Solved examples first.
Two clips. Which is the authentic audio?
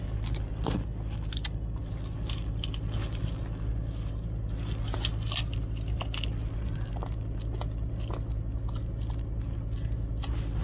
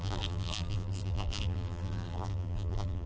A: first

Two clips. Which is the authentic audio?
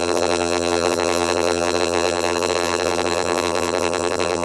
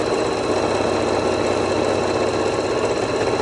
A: second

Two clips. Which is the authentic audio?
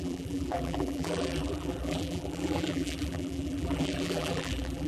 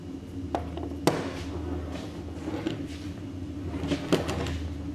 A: second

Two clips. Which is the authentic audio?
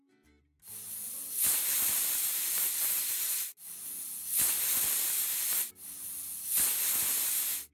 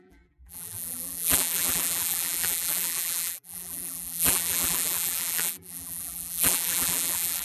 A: first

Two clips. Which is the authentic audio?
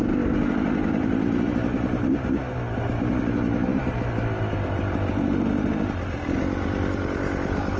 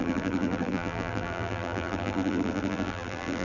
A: first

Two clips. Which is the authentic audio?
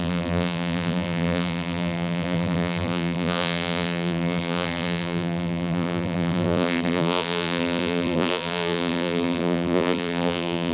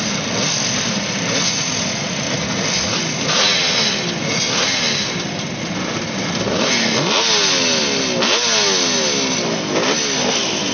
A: second